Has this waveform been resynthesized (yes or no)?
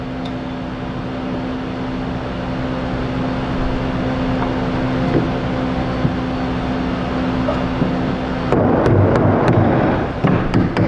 no